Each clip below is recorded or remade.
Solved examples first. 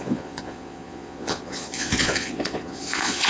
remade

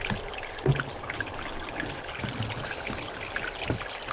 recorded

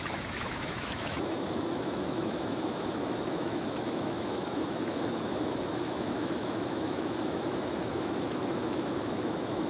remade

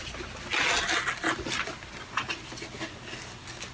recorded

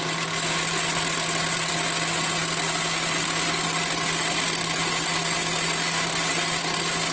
recorded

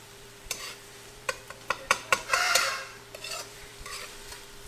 remade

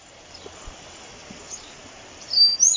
recorded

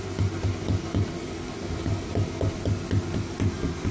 recorded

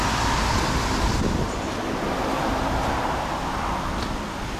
recorded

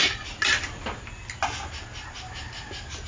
recorded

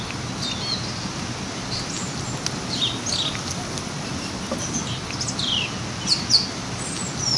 recorded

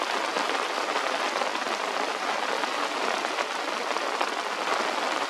recorded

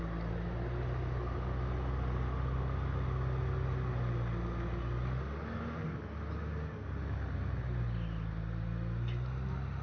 recorded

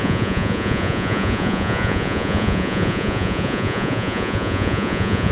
remade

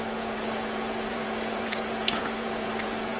remade